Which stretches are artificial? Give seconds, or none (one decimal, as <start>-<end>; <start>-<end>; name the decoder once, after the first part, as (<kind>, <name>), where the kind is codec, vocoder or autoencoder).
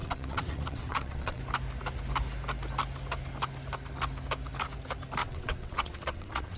0.0-1.4 (vocoder, WaveNeXt); 5.2-6.6